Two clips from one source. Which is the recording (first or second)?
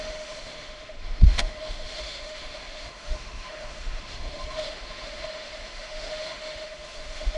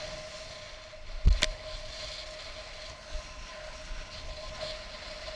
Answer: second